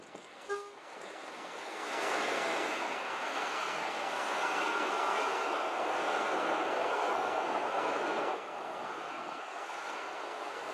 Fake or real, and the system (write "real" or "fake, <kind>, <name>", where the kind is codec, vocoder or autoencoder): fake, codec, SNAC